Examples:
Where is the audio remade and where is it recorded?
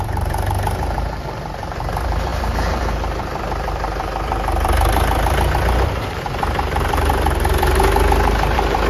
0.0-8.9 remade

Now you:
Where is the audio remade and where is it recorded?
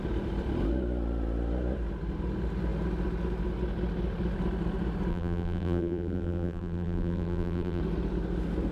0.0-5.1 recorded; 5.1-7.8 remade; 7.8-8.7 recorded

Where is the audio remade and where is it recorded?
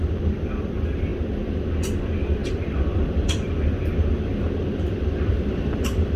0.0-1.1 remade; 1.1-2.0 recorded; 2.0-6.2 remade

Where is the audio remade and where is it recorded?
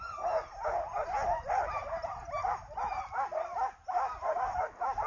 0.0-5.1 recorded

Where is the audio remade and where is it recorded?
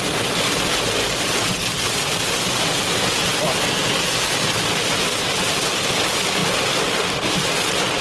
0.0-1.6 recorded; 1.6-2.7 remade; 2.7-8.0 recorded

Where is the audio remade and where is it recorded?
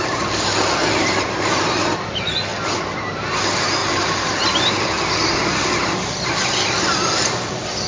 0.0-3.8 recorded; 3.8-4.7 remade; 4.7-7.9 recorded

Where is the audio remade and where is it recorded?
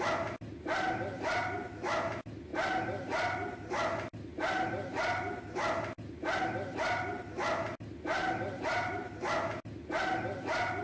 0.0-8.2 recorded; 8.2-9.1 remade; 9.1-10.8 recorded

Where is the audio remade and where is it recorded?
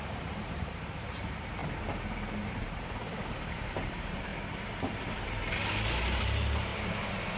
0.0-1.6 remade; 1.6-2.5 recorded; 2.5-4.3 remade; 4.3-4.8 recorded; 4.8-6.7 remade; 6.7-7.4 recorded